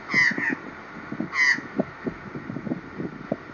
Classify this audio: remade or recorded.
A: recorded